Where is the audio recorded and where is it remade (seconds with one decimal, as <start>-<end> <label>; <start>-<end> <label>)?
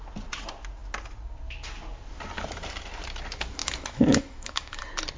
0.0-3.6 recorded; 3.6-4.8 remade; 4.8-5.2 recorded